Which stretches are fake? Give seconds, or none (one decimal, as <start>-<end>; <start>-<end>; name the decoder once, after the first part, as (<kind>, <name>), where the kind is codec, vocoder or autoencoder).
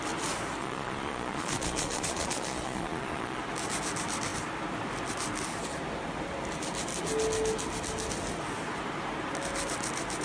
0.6-3.4 (vocoder, Vocos)